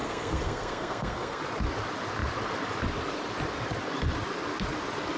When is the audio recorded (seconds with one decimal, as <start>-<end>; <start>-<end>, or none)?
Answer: 1.4-5.2